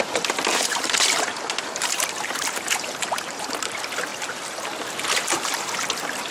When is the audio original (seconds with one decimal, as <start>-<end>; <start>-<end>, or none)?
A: 0.0-0.5; 3.5-4.1; 4.6-6.3